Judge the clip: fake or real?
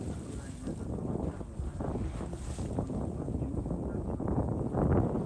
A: real